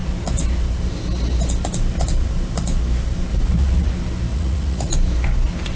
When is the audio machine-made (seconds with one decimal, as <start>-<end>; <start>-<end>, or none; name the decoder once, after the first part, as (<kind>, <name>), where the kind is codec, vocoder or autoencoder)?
3.3-3.9 (vocoder, Vocos); 4.3-4.9